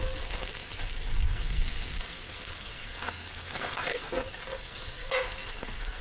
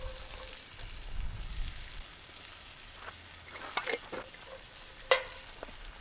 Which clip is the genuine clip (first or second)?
second